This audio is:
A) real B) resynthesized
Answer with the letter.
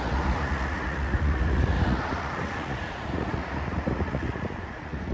B